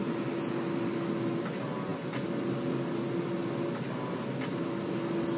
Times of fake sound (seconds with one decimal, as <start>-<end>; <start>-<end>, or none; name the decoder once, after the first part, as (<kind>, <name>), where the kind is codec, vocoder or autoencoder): none